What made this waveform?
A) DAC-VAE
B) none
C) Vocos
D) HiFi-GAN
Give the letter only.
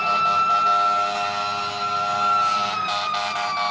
B